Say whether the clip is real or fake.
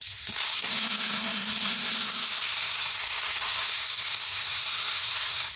fake